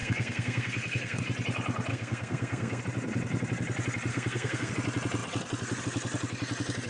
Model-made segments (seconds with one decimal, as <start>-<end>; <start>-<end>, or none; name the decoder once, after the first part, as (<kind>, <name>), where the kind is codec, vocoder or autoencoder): 0.0-1.2 (codec, SNAC); 1.9-2.8; 4.1-4.7